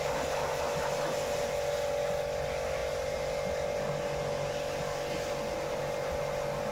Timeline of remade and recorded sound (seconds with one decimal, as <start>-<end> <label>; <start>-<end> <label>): 0.0-6.7 recorded